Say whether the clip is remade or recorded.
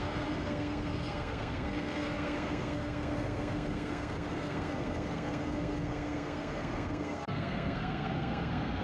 remade